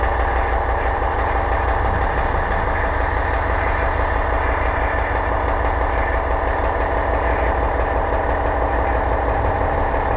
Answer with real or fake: real